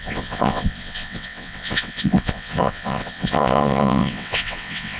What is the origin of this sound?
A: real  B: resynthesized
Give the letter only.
B